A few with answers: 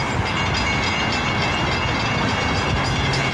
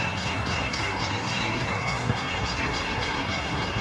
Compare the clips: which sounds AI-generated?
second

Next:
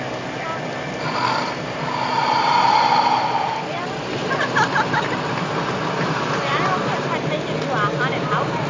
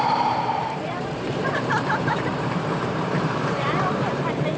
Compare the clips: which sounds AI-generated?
second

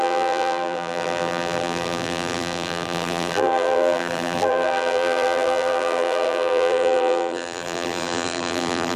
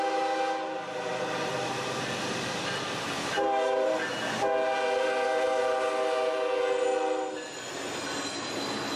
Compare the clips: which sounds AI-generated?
first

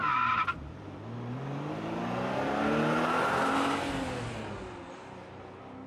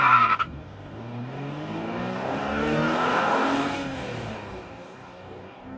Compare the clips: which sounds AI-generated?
second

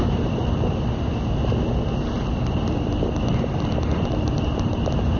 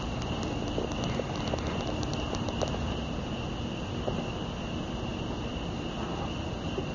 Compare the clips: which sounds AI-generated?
first